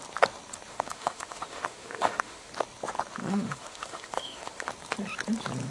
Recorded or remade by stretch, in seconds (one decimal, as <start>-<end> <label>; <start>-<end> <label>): 0.0-0.7 recorded; 0.7-2.5 remade; 2.5-3.2 recorded; 3.2-4.7 remade; 4.7-5.7 recorded